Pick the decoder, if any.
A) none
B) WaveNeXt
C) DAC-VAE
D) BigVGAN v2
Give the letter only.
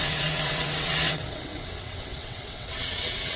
B